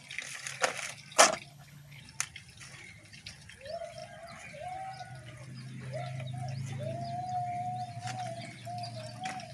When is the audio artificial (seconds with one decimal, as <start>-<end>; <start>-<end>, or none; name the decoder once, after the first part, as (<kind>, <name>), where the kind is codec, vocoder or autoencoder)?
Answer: 1.5-2.0 (codec, HILCodec)